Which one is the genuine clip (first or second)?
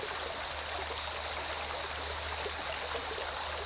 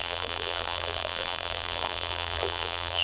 first